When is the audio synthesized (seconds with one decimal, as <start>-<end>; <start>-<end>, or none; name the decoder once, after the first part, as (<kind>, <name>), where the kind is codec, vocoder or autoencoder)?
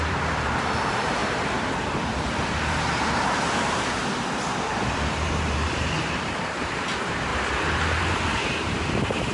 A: 0.0-7.3 (vocoder, BigVGAN v2); 8.0-9.3